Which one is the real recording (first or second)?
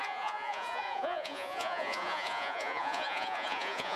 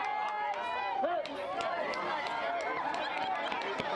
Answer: second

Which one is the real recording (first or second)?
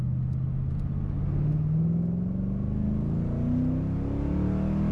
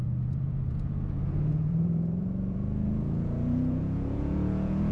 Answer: first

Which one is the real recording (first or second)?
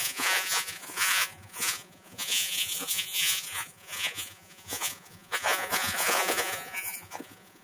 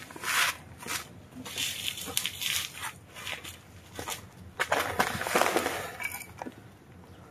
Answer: second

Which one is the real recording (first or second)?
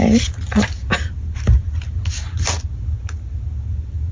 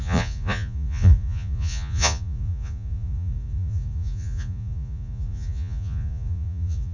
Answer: first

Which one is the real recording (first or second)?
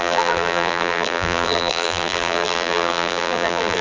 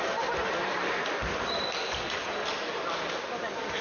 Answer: second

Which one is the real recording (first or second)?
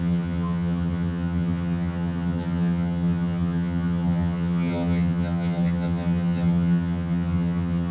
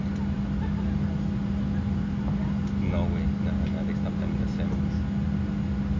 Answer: second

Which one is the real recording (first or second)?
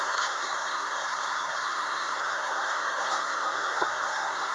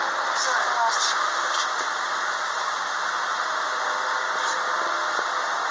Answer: second